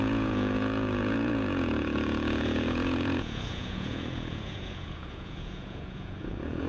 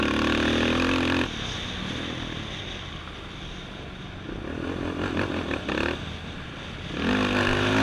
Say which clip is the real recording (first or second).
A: second